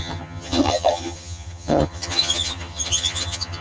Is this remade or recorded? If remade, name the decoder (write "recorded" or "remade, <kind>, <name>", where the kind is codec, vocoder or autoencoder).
remade, vocoder, HiFi-GAN